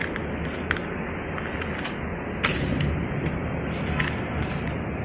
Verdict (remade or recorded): recorded